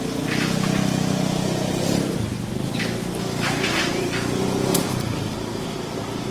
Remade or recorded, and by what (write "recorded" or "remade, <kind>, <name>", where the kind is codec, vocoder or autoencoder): recorded